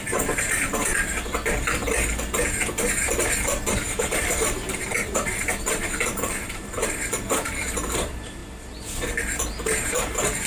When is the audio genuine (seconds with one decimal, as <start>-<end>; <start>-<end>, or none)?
0.9-3.7; 8.4-9.5